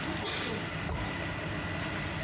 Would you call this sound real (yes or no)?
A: yes